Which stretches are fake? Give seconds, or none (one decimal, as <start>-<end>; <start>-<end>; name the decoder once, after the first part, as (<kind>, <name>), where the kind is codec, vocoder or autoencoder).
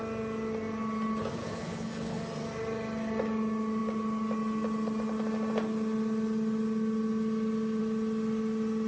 1.4-2.2 (codec, HILCodec)